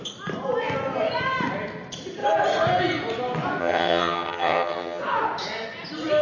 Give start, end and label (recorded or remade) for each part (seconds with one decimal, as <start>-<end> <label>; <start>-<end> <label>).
0.0-3.6 recorded; 3.6-5.0 remade; 5.0-6.2 recorded